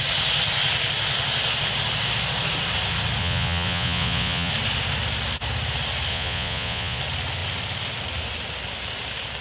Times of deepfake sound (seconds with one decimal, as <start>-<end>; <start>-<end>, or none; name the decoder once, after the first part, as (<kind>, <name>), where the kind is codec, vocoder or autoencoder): 3.2-4.5 (vocoder, Vocos); 6.1-7.0